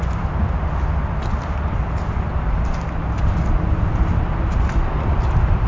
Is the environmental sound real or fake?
real